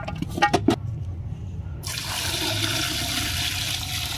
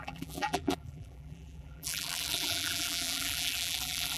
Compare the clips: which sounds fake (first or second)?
second